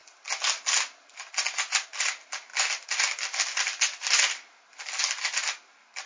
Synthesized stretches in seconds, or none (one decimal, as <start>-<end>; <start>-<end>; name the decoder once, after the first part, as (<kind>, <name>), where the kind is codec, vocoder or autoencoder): none